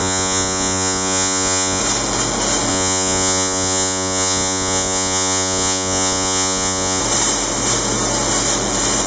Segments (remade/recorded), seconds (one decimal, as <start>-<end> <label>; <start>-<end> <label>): 0.0-1.8 remade; 1.8-2.7 recorded; 2.7-7.0 remade; 7.0-9.1 recorded

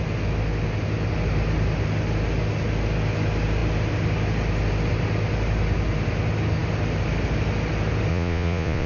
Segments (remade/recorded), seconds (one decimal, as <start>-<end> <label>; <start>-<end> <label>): 0.0-8.1 recorded; 8.1-8.9 remade

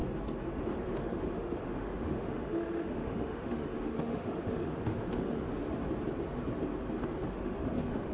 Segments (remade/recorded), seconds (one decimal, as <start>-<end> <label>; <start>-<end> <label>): 0.0-0.6 recorded; 0.6-5.5 remade; 5.5-7.2 recorded; 7.2-8.1 remade